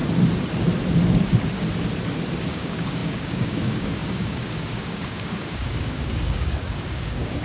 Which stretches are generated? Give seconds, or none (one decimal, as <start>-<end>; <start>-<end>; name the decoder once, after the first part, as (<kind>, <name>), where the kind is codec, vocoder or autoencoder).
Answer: 2.5-7.4 (codec, DAC)